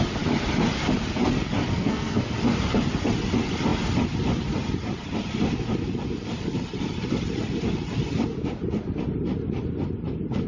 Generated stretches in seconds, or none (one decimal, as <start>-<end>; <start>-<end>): 1.7-2.3